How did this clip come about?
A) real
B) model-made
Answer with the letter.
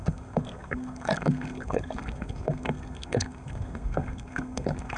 B